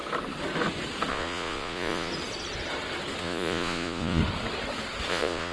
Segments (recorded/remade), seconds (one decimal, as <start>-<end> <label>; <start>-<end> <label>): 0.0-1.1 recorded; 1.1-2.1 remade; 2.1-3.2 recorded; 3.2-4.2 remade; 4.2-5.1 recorded; 5.1-5.5 remade